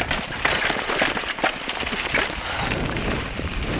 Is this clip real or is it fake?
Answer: real